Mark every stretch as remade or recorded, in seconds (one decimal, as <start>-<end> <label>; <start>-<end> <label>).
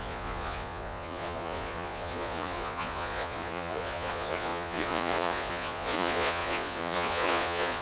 0.0-7.8 remade